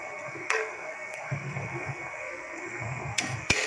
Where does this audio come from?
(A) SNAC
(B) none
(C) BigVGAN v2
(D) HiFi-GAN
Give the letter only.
A